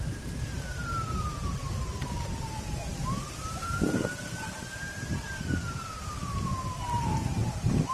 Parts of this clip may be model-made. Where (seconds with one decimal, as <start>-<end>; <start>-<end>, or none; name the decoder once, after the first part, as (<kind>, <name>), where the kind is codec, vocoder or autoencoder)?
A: 0.0-7.9 (vocoder, BigVGAN v2)